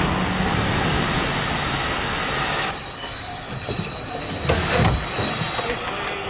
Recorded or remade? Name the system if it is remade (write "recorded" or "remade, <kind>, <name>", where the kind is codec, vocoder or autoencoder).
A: recorded